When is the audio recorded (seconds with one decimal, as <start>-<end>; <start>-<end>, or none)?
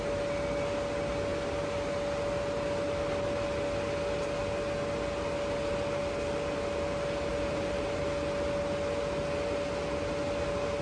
0.0-7.3; 8.0-10.8